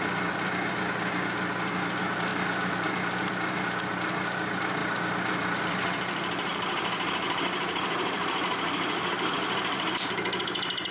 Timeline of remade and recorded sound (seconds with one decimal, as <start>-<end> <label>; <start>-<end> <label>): 0.0-2.3 recorded; 2.3-2.9 remade; 2.9-6.5 recorded; 6.5-10.4 remade; 10.4-10.9 recorded